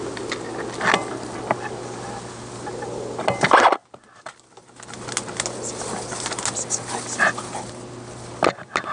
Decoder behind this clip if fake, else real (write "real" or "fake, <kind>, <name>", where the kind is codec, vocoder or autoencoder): real